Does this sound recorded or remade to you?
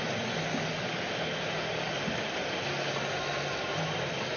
recorded